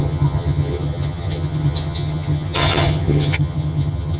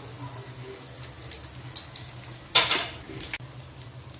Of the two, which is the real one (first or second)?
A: second